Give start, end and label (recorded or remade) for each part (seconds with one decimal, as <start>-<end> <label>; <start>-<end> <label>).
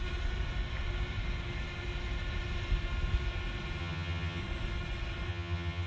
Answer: 0.0-3.8 recorded; 3.8-4.4 remade; 4.4-5.3 recorded; 5.3-5.9 remade